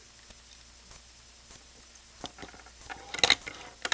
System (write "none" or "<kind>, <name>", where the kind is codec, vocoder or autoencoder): none